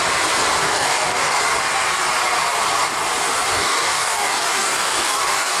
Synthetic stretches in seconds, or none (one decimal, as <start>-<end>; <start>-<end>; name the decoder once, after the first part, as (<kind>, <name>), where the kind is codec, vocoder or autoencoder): 0.6-1.4 (codec, DAC); 3.5-5.6